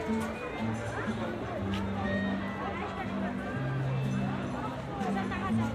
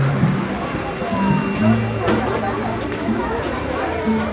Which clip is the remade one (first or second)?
second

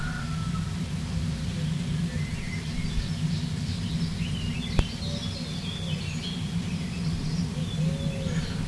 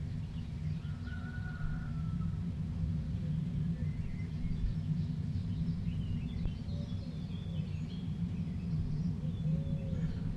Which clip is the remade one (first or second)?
first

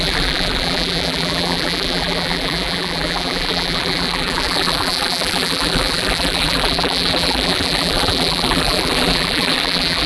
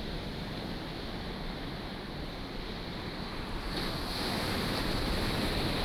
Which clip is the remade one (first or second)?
first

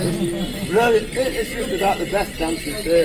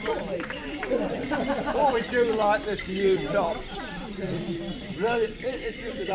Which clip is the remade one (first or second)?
second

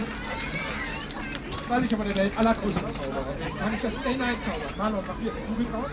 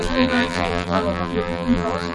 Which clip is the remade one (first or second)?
second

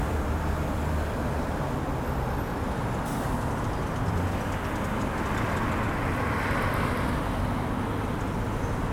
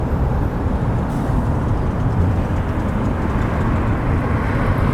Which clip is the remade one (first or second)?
second